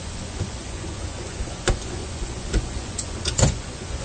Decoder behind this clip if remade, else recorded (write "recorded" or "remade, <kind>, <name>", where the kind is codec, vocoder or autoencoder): remade, vocoder, Vocos